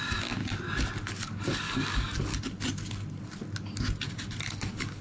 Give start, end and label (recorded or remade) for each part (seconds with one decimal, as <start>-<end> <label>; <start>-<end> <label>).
0.0-0.4 remade; 0.4-1.1 recorded; 1.1-2.3 remade; 2.3-4.4 recorded; 4.4-5.0 remade